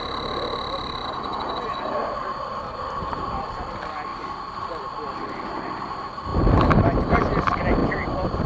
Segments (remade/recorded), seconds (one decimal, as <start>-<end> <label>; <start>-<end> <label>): 0.0-2.0 recorded; 2.0-3.3 remade; 3.3-6.3 recorded; 6.3-7.1 remade; 7.1-7.8 recorded; 7.8-8.5 remade